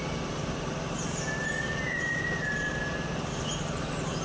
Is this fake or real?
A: real